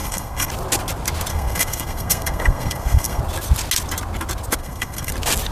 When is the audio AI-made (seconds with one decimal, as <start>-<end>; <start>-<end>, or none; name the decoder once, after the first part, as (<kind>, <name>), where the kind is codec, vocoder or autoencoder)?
0.0-0.5 (codec, SNAC); 1.3-3.2; 4.6-5.1